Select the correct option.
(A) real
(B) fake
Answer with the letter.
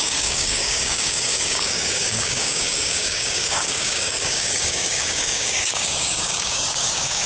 B